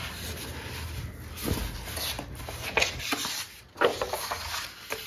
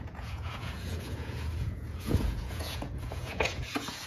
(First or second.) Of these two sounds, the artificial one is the second